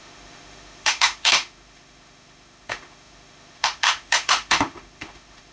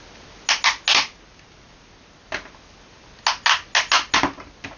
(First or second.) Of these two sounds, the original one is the second